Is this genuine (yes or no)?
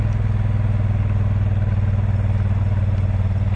yes